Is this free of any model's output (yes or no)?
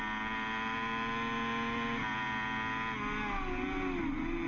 yes